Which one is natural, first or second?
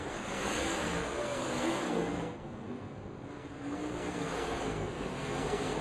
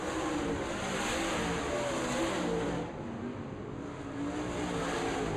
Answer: second